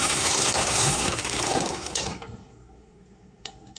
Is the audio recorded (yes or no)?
no